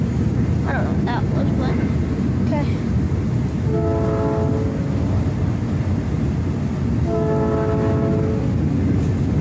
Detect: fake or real real